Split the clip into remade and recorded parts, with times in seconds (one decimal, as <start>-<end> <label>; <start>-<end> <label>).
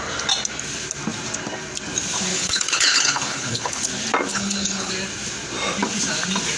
0.0-2.3 recorded; 2.3-3.8 remade; 3.8-4.3 recorded; 4.3-4.9 remade; 4.9-6.6 recorded